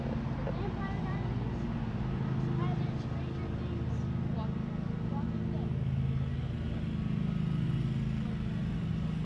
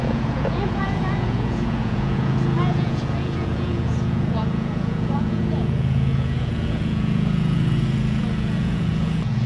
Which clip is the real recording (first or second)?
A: first